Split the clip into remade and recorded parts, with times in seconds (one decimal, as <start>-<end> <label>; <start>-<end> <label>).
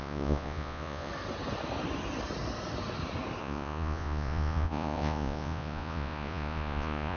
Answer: 0.0-1.1 remade; 1.1-3.4 recorded; 3.4-7.2 remade